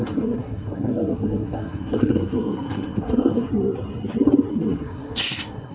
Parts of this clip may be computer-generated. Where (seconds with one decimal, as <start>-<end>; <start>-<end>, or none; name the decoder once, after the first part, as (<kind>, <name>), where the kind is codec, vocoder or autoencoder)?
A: 0.0-3.5 (codec, SNAC); 4.5-5.7